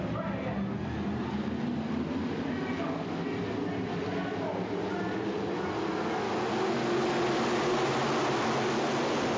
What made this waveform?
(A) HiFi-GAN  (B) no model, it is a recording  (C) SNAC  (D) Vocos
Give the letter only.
B